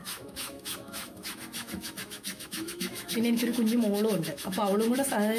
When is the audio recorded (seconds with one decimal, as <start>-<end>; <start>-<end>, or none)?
none